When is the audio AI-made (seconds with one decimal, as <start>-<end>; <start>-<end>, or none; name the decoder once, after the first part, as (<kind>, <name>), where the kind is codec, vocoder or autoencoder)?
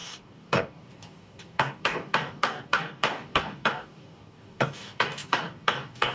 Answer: 0.0-6.1 (codec, DAC)